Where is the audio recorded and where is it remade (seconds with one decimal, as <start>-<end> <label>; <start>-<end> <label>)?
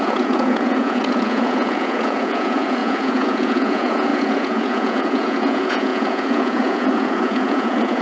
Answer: 0.0-8.0 remade